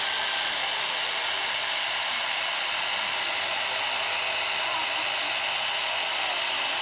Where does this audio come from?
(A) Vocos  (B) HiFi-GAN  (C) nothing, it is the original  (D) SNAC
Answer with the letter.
C